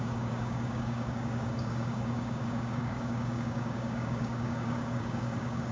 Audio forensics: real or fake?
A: fake